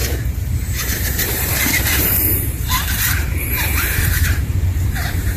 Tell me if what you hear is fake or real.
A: fake